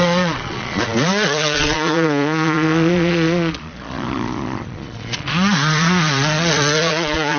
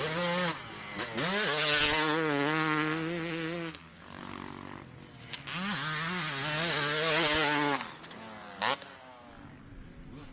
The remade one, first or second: first